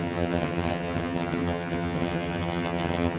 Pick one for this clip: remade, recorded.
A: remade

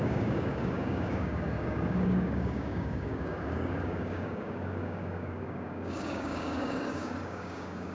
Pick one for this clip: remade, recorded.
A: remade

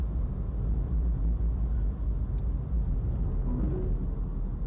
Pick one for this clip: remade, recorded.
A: recorded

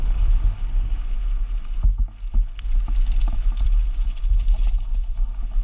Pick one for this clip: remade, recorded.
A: recorded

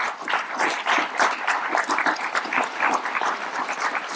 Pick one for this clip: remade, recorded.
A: recorded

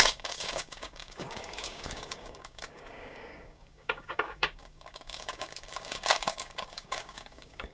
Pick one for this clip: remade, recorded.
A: remade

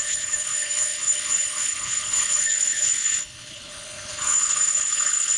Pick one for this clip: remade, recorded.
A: remade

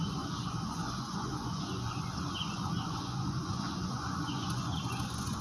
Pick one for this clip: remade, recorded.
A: remade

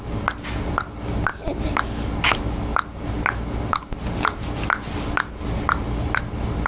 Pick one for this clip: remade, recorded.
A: recorded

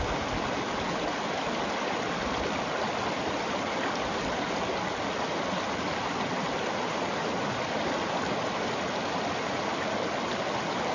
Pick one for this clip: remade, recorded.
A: recorded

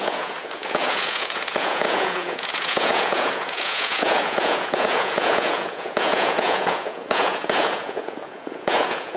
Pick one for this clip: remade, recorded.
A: remade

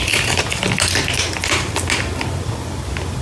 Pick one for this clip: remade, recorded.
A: recorded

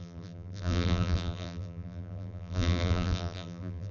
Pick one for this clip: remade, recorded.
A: remade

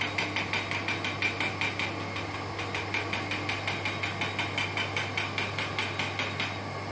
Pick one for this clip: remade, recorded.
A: recorded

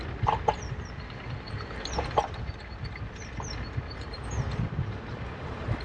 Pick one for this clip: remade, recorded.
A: remade